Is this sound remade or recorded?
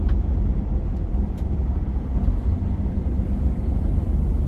recorded